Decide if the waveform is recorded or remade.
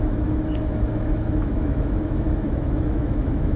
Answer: remade